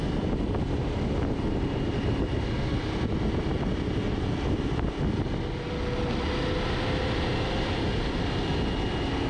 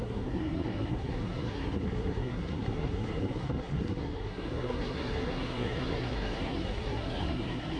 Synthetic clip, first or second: second